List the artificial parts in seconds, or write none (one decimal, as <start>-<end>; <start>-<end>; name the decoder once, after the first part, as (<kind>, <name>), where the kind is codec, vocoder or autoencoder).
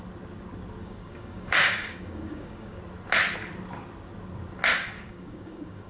0.8-2.8 (codec, DAC); 4.7-5.9